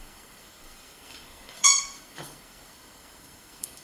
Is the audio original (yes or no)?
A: no